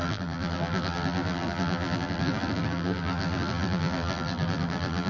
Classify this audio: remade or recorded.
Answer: remade